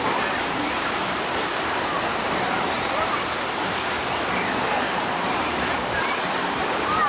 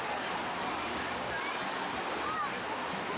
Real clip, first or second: second